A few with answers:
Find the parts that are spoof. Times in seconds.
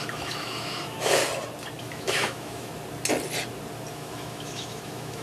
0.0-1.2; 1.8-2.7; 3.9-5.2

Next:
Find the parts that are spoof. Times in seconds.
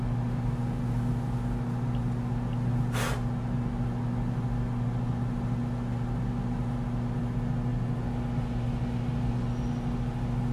none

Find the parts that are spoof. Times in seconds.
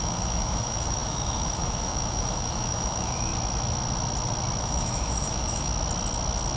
0.0-3.3; 4.6-5.7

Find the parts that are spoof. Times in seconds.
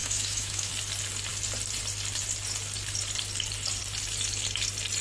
0.0-0.7